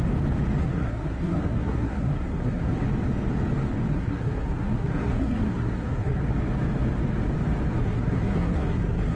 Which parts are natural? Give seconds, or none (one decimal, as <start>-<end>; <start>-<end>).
0.0-0.6; 2.7-3.9; 6.2-7.8